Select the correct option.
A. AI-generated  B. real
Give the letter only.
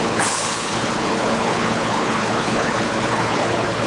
A